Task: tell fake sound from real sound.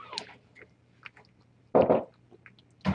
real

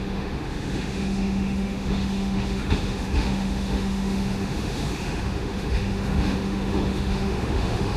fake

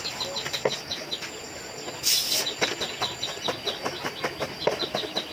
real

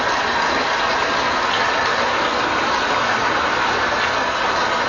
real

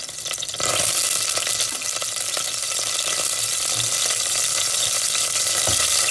real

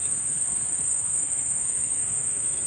fake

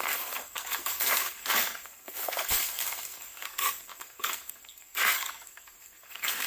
fake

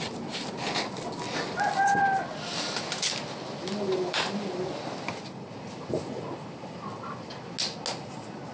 real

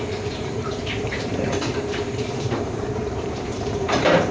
fake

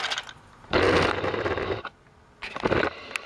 real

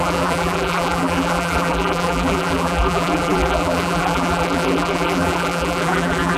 fake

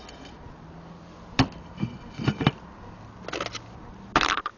real